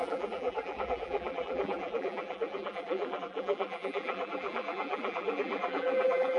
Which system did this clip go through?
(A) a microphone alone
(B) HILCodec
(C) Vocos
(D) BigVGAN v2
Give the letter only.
D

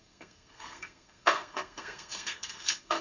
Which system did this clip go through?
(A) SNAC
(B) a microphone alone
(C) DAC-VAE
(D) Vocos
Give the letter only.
A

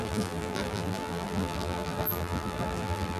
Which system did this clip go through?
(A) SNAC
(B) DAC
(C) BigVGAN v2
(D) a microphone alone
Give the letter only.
C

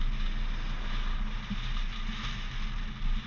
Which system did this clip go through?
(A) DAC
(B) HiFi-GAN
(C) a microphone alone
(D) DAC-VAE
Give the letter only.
C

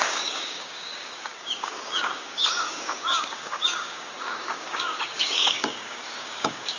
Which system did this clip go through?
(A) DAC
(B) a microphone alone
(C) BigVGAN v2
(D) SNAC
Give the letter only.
A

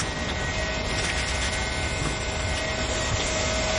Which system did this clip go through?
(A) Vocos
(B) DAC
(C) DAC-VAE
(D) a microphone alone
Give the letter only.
D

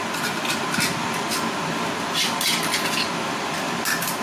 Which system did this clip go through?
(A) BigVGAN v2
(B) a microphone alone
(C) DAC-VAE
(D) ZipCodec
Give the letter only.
A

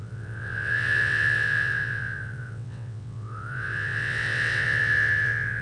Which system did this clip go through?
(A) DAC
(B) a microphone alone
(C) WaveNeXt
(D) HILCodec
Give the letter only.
C